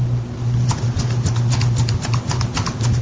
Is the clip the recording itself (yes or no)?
yes